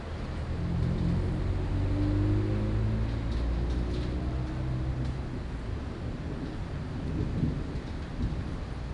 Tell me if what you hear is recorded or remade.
recorded